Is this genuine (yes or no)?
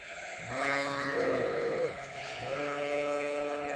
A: no